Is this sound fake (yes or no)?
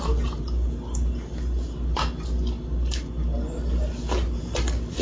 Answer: no